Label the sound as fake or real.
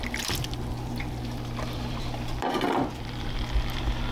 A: fake